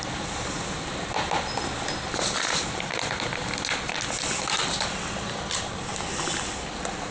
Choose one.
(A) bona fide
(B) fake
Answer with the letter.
A